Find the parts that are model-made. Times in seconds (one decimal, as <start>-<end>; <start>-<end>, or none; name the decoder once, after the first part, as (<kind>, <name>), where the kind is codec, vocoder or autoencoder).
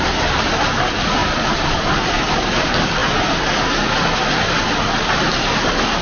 0.0-3.0 (vocoder, BigVGAN v2); 5.0-6.0